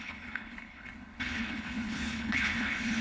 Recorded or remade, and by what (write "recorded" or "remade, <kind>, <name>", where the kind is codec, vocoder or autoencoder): remade, codec, HILCodec